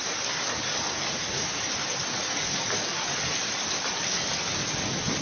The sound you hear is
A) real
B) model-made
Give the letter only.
A